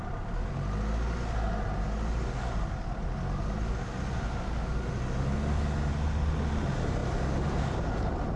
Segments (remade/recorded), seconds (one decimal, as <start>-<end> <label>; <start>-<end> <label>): 0.0-8.4 recorded

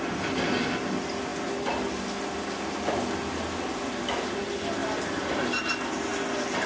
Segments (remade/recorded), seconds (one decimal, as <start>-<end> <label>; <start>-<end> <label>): 0.0-6.7 recorded